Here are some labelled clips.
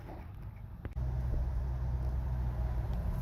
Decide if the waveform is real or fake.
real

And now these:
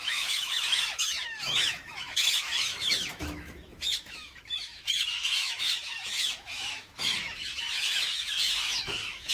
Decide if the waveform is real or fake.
fake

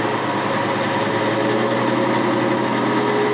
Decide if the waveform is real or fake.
real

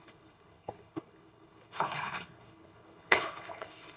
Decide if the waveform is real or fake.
fake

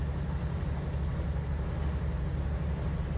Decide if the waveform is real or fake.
real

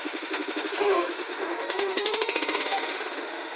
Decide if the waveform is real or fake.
fake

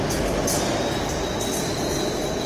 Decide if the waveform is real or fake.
real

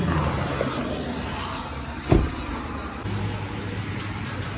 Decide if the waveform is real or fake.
real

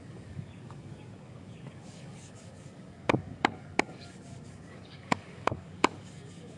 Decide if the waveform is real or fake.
fake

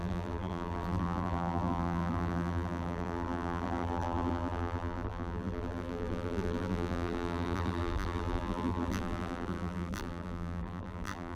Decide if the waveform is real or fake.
fake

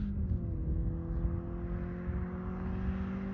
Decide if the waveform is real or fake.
real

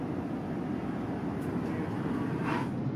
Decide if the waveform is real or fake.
real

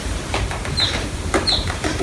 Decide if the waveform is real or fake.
fake